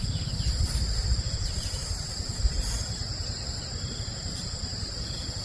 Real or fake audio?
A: fake